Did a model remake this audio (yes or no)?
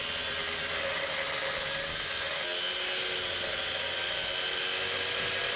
no